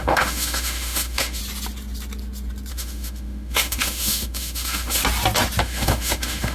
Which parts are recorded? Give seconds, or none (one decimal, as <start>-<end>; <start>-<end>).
1.4-2.7; 5.0-5.6